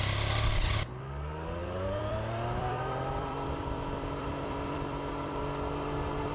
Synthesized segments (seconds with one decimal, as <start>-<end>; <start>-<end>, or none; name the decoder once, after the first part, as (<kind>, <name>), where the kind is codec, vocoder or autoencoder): 1.6-5.4 (vocoder, BigVGAN v2)